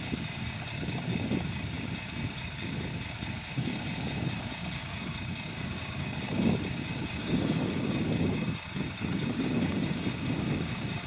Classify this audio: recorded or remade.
remade